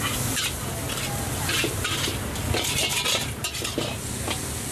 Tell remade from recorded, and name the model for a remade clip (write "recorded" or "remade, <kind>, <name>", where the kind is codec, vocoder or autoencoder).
recorded